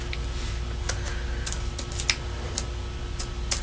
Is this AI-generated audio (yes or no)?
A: no